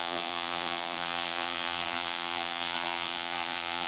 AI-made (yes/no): yes